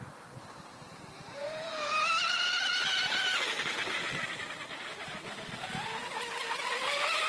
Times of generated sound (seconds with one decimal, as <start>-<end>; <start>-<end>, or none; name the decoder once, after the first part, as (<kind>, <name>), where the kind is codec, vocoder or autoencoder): 1.4-2.1 (vocoder, Vocos)